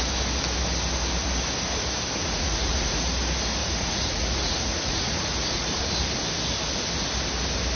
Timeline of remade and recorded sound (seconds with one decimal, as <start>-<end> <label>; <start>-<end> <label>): 0.0-2.2 recorded; 2.2-3.0 remade; 3.0-3.6 recorded; 3.6-5.9 remade; 5.9-7.8 recorded